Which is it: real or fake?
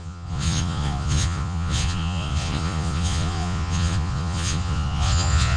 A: fake